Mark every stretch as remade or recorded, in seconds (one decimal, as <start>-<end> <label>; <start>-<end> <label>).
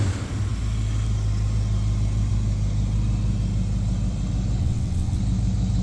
0.0-4.6 recorded; 4.6-5.2 remade; 5.2-5.8 recorded